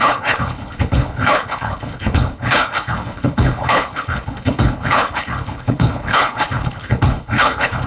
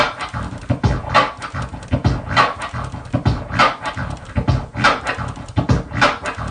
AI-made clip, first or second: first